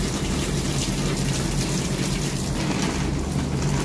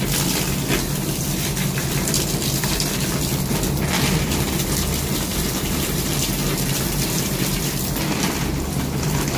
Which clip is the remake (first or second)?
second